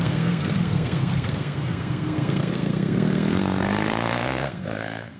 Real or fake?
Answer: fake